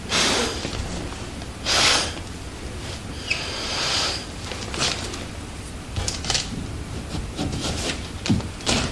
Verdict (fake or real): real